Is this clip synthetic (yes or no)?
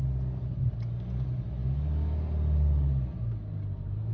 no